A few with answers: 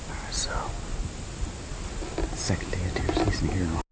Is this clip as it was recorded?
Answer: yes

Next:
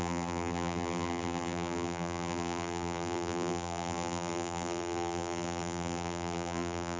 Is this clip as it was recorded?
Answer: no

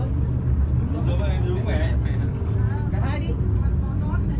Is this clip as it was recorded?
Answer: yes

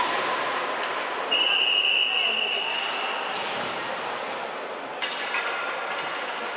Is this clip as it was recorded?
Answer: yes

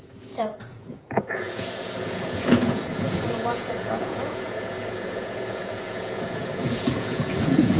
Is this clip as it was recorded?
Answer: no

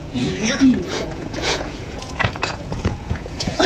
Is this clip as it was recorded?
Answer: no